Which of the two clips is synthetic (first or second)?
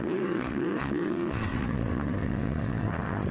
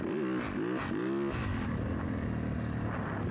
first